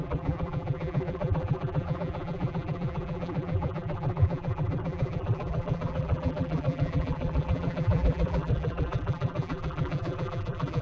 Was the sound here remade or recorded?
remade